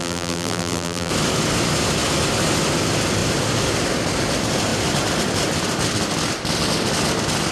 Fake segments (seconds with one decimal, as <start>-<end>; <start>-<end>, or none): 0.0-1.1